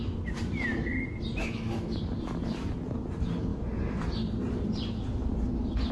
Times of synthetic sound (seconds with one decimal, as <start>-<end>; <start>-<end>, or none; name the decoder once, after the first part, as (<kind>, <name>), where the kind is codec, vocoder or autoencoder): 1.4-2.0 (autoencoder, DAC-VAE)